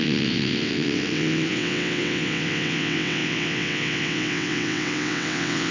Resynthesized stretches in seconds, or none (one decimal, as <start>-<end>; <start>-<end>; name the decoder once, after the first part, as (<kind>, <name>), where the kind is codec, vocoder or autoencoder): 0.0-5.7 (vocoder, WaveNeXt)